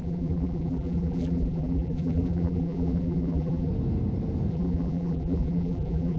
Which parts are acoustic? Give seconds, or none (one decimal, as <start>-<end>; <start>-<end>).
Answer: 3.7-4.5